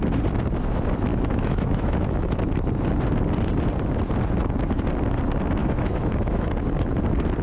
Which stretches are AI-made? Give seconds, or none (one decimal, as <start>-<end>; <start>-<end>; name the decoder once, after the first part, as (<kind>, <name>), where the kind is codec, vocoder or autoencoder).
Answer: 1.1-2.5 (autoencoder, DAC-VAE); 5.6-6.5